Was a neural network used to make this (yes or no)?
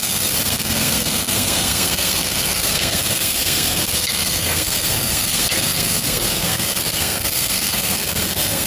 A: yes